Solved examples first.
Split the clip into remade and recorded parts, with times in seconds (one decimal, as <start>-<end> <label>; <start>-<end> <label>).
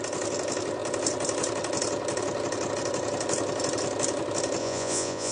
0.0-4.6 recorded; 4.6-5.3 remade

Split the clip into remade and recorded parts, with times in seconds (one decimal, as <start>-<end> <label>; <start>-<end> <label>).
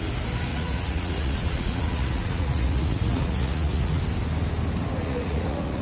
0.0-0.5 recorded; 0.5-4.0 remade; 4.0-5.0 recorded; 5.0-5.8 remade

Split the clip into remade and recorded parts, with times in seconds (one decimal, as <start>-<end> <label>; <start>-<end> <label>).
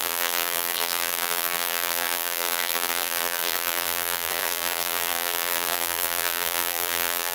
0.0-7.3 remade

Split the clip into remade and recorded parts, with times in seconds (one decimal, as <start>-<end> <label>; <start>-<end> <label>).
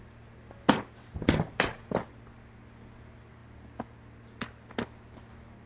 0.0-5.7 recorded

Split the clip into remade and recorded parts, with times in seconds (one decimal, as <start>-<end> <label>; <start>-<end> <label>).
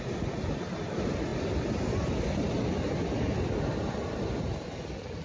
0.0-5.2 recorded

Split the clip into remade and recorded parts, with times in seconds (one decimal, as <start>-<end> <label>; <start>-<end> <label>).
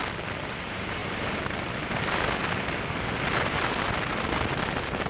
0.0-5.1 recorded